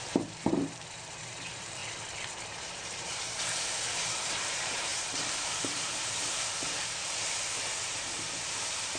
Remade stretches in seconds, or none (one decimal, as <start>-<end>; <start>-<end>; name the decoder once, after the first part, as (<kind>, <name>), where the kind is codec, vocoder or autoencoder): 0.0-1.8 (vocoder, BigVGAN v2); 2.7-7.0; 7.8-9.0